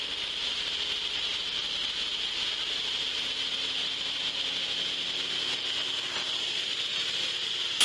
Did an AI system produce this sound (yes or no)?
no